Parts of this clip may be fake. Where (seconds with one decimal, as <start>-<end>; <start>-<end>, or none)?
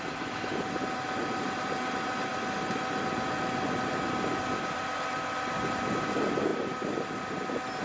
none